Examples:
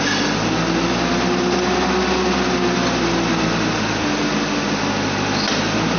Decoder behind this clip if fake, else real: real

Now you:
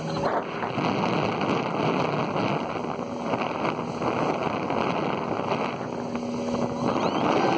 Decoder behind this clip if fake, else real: real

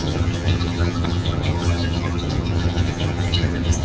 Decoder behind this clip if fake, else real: fake, vocoder, HiFi-GAN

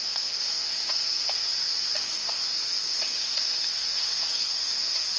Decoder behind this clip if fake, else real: fake, codec, SNAC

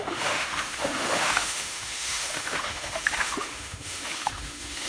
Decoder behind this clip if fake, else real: fake, autoencoder, DAC-VAE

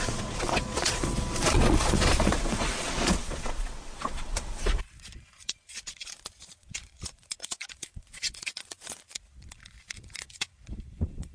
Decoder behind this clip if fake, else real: fake, vocoder, Vocos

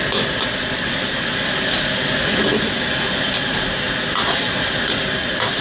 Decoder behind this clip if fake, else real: real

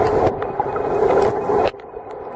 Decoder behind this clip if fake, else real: real